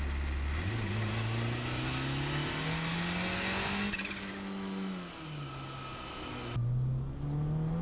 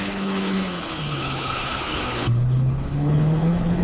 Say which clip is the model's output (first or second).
second